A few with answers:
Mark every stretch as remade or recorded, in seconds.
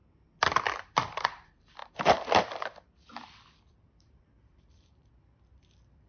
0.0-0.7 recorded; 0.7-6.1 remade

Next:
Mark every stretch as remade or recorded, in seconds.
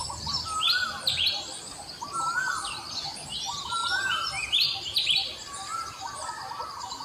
0.0-7.0 recorded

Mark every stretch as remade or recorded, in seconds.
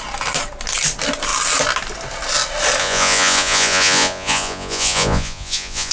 0.0-2.8 recorded; 2.8-5.9 remade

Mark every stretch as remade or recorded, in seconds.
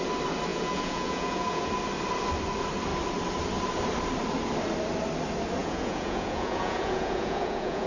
0.0-0.5 recorded; 0.5-1.7 remade; 1.7-5.6 recorded; 5.6-7.9 remade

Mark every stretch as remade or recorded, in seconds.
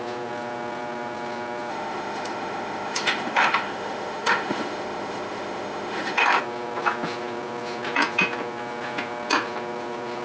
0.0-1.7 recorded; 1.7-6.4 remade; 6.4-10.2 recorded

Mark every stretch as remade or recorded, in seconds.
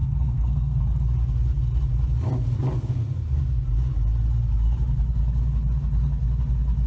0.0-0.8 remade; 0.8-6.9 recorded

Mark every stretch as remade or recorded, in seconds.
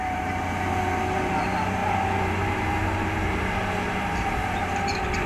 0.0-5.3 remade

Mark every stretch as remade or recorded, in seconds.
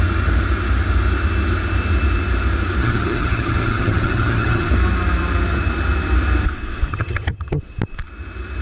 0.0-2.8 recorded; 2.8-4.7 remade; 4.7-6.9 recorded; 6.9-7.6 remade; 7.6-8.6 recorded